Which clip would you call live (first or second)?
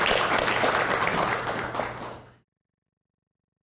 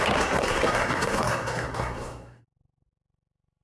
first